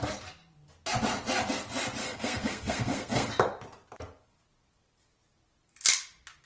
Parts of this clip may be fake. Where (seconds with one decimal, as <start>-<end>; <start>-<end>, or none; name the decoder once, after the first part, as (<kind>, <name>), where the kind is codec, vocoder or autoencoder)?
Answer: 2.0-3.3 (codec, SNAC)